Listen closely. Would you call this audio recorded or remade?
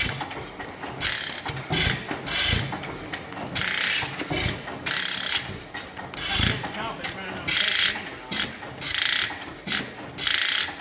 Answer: recorded